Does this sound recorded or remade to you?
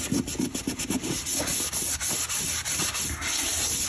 recorded